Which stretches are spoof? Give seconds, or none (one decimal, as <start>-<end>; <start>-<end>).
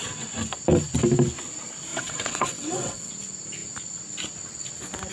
1.9-3.1